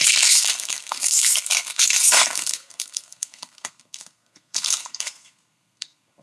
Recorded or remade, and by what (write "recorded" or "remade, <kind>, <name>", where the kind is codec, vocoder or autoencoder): remade, codec, SNAC